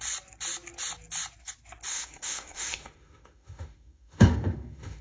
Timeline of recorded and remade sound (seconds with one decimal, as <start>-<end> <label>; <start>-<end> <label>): 0.0-1.9 recorded; 1.9-5.0 remade